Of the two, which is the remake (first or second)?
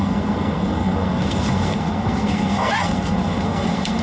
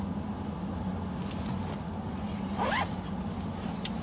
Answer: first